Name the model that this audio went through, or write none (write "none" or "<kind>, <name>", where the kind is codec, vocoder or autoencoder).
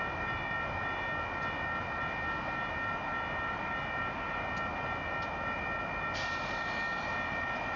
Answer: none